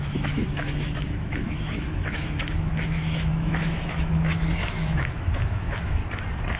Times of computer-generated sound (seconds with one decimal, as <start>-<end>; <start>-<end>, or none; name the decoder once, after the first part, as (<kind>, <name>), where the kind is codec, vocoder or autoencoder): 0.0-6.0 (autoencoder, DAC-VAE)